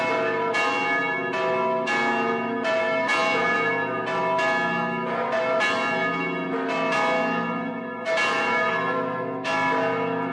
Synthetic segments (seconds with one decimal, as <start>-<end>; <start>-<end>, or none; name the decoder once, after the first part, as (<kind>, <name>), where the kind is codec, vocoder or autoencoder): none